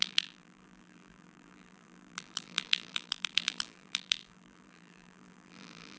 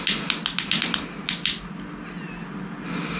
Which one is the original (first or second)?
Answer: second